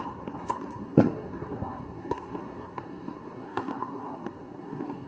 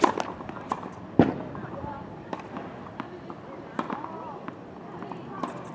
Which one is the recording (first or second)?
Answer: second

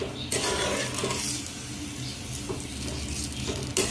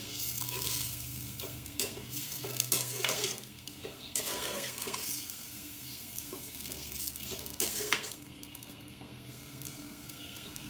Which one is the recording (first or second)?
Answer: first